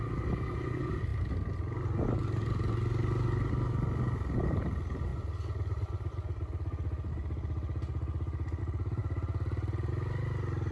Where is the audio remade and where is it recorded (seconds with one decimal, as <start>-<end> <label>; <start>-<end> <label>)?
0.0-10.7 recorded